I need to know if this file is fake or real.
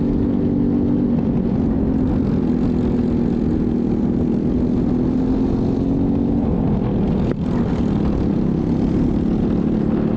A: real